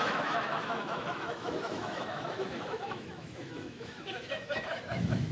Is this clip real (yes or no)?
no